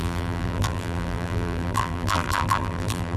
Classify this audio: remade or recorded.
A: remade